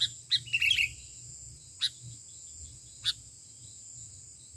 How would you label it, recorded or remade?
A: recorded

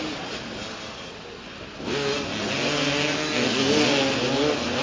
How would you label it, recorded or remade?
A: recorded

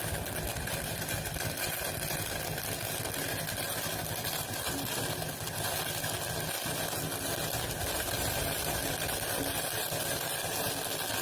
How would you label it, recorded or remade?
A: recorded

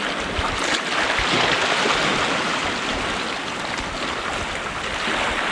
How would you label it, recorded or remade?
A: recorded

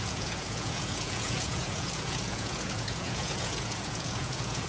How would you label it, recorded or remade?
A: remade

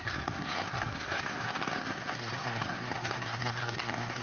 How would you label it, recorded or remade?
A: remade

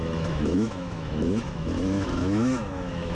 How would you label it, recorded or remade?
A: remade